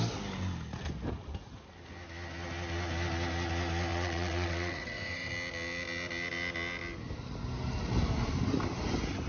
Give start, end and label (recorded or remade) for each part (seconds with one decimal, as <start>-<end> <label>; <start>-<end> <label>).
0.0-3.9 recorded; 3.9-5.3 remade; 5.3-9.3 recorded